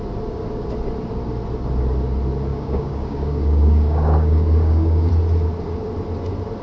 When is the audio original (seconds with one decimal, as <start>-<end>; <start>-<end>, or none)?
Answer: 0.0-2.5; 5.1-6.6

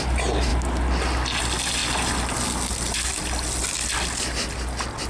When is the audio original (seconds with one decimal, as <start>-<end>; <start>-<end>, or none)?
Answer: 0.0-5.1

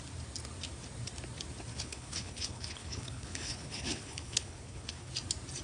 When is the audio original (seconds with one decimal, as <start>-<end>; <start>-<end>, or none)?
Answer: 0.0-1.7; 5.1-5.6

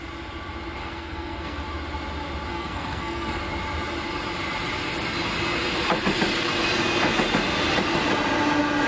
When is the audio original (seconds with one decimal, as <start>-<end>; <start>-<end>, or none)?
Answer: 0.0-0.8; 1.6-2.5; 3.4-8.9

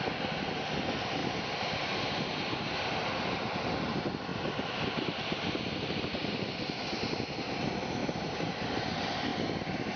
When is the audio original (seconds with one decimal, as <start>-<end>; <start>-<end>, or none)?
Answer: 0.0-1.2; 2.9-8.0; 8.9-10.0